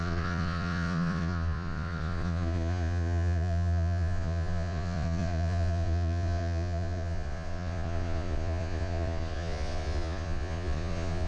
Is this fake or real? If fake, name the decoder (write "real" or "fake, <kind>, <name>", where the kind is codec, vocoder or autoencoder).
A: fake, vocoder, Vocos